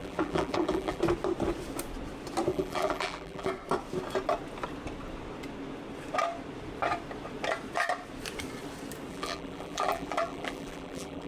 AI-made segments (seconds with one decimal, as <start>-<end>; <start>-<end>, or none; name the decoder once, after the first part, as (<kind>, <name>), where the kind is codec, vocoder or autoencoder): 0.0-1.0 (vocoder, BigVGAN v2); 2.5-3.5; 9.1-11.3